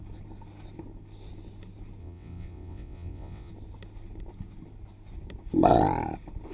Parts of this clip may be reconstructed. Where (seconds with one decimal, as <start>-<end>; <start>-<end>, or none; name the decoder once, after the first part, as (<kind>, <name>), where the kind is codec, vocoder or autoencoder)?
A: 2.0-3.5 (vocoder, WaveNeXt)